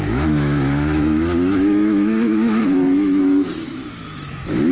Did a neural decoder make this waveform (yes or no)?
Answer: yes